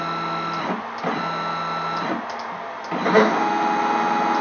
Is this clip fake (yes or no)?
no